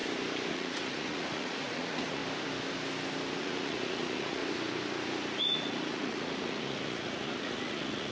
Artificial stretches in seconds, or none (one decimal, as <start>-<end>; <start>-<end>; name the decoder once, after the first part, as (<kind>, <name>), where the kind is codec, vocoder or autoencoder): 0.5-2.2 (vocoder, Vocos); 3.4-4.4; 5.4-8.1